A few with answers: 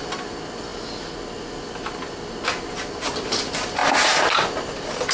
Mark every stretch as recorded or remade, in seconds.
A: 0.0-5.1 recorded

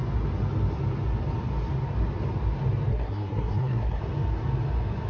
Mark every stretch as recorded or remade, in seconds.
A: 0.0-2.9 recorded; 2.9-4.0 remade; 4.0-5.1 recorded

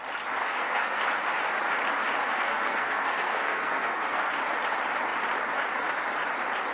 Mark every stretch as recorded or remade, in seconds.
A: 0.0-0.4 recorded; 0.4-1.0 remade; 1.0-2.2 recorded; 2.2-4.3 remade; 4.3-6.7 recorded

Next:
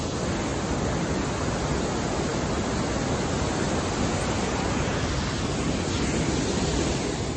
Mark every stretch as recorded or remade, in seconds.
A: 0.0-7.4 recorded

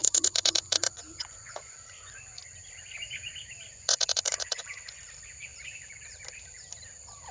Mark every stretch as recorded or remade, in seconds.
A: 0.0-2.4 remade; 2.4-3.7 recorded; 3.7-5.0 remade; 5.0-7.3 recorded

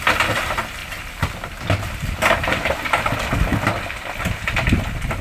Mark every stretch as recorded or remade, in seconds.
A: 0.0-5.2 recorded